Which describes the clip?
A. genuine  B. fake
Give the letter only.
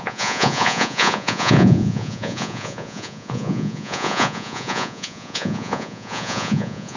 B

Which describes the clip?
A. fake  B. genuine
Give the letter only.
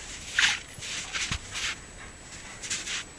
B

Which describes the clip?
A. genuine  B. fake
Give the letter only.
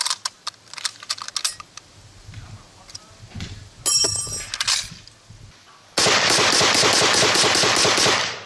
A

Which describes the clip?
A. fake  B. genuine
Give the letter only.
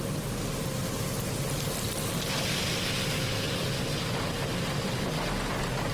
B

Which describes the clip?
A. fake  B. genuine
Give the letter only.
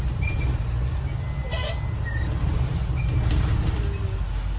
B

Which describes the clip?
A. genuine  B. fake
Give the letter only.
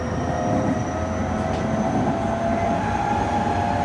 A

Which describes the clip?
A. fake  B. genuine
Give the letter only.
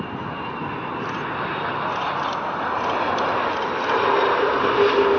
B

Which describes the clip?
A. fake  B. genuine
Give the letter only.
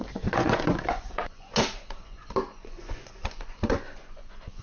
A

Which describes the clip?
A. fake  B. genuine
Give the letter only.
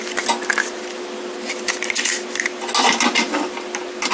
B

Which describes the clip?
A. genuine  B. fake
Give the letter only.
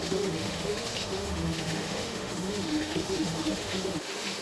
B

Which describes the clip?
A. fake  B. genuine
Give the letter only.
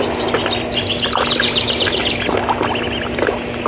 B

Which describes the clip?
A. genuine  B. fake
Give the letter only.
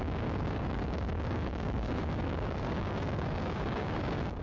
B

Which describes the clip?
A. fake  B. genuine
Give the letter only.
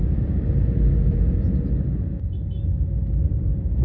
B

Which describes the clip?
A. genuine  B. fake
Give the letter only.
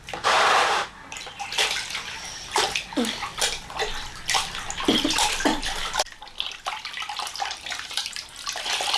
A